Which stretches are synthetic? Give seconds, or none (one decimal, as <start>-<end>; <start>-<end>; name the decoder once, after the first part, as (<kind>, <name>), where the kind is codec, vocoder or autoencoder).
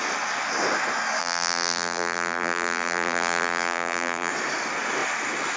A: 1.2-4.3 (vocoder, BigVGAN v2)